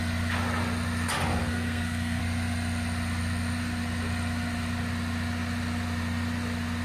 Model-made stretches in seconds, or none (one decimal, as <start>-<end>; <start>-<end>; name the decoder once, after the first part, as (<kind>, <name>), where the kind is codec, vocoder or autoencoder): 1.4-2.2 (codec, SNAC)